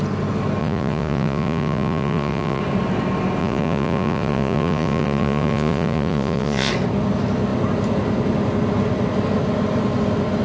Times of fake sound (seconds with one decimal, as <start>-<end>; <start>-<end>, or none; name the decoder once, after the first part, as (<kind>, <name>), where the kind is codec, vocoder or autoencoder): 0.6-2.6 (vocoder, Vocos); 3.4-6.7